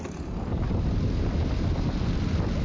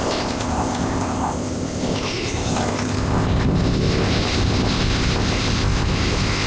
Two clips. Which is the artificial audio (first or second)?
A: second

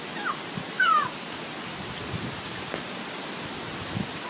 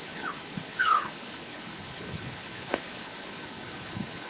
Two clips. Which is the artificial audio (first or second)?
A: second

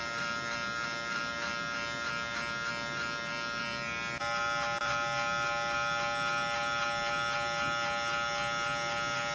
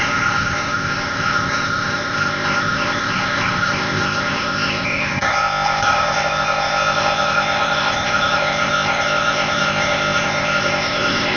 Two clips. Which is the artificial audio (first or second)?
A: second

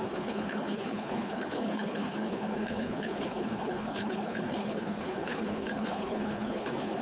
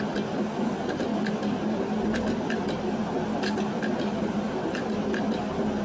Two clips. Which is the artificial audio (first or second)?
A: first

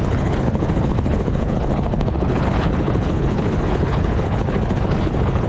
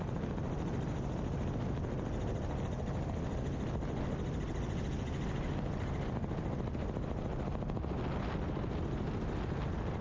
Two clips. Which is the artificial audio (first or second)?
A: first